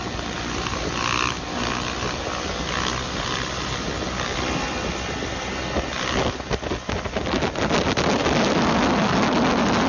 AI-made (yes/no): no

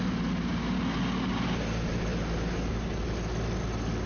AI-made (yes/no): no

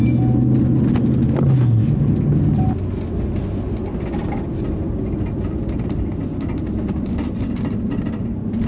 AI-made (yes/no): no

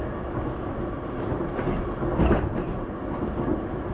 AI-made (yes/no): no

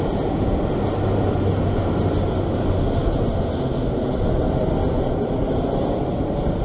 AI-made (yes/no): no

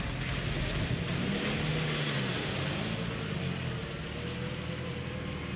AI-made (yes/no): no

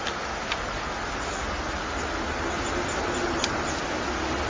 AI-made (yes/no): no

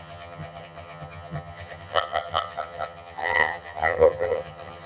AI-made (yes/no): yes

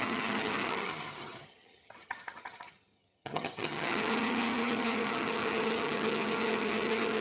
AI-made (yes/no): yes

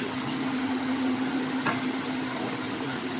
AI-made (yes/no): yes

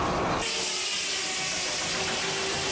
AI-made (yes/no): no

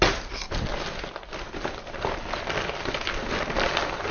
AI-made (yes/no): no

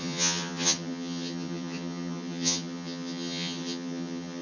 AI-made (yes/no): yes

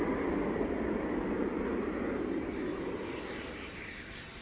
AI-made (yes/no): no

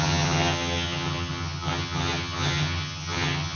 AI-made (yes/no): yes